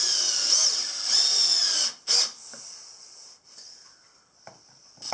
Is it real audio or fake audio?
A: real